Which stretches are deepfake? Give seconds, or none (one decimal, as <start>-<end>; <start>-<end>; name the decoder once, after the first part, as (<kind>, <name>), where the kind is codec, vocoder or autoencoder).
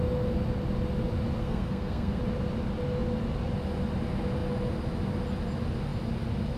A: 1.4-2.2 (codec, SNAC)